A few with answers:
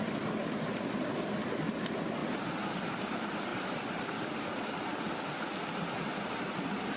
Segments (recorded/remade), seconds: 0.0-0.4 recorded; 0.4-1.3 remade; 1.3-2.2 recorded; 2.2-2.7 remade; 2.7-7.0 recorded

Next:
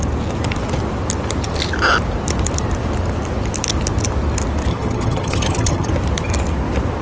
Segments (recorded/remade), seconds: 0.0-4.7 recorded; 4.7-5.9 remade; 5.9-7.0 recorded

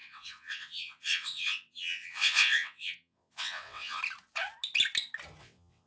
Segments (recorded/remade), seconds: 0.0-4.0 remade; 4.0-5.4 recorded; 5.4-5.9 remade

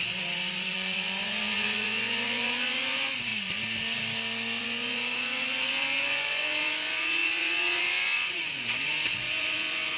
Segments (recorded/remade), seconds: 0.0-3.3 remade; 3.3-4.6 recorded; 4.6-10.0 remade